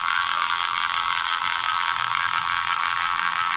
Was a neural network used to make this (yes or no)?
yes